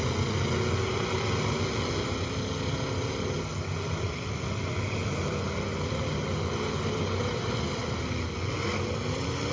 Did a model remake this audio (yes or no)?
no